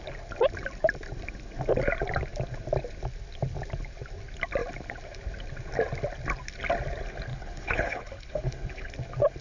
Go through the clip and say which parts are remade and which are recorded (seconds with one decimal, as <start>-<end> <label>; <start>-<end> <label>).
0.0-7.3 recorded; 7.3-8.9 remade; 8.9-9.4 recorded